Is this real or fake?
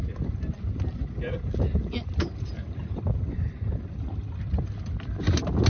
real